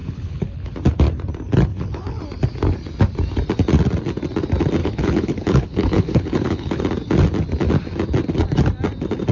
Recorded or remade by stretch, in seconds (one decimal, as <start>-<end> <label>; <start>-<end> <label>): 0.0-0.7 remade; 0.7-1.7 recorded; 1.7-2.2 remade; 2.2-4.8 recorded; 4.8-6.8 remade; 6.8-9.3 recorded